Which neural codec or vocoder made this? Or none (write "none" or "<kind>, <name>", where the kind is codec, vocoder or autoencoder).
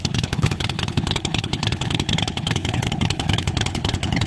codec, HILCodec